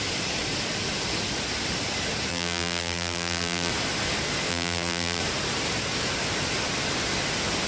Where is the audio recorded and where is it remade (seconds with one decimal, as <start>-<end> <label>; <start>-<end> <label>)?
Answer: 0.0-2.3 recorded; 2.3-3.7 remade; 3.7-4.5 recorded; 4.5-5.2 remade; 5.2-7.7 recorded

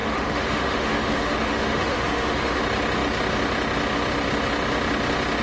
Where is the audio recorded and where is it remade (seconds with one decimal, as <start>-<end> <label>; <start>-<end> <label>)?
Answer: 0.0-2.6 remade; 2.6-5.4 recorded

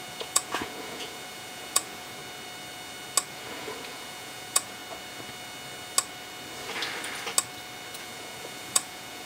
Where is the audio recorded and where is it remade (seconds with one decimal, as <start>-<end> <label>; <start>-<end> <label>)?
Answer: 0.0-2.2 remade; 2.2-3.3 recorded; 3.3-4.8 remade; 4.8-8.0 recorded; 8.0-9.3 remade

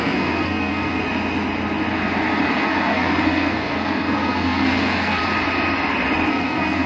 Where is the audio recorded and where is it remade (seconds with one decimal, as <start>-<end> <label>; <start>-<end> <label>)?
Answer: 0.0-1.0 remade; 1.0-2.5 recorded; 2.5-5.2 remade; 5.2-6.3 recorded; 6.3-6.9 remade

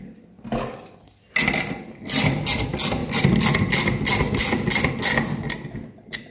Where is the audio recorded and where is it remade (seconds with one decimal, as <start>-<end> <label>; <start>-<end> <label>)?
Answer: 0.0-6.3 recorded

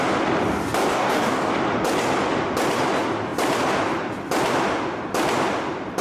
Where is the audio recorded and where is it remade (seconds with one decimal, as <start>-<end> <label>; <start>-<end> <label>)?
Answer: 0.0-0.9 recorded; 0.9-1.5 remade; 1.5-6.0 recorded